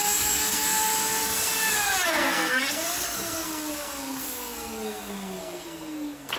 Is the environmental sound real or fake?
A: fake